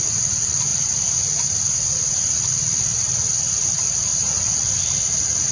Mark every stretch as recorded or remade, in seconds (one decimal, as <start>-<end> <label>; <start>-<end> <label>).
0.0-5.5 recorded